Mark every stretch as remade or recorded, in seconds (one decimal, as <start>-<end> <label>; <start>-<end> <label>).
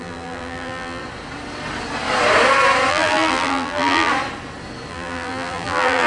0.0-1.0 remade; 1.0-2.9 recorded; 2.9-4.1 remade; 4.1-4.9 recorded; 4.9-6.1 remade